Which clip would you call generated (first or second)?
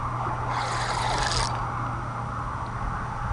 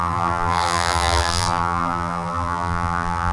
second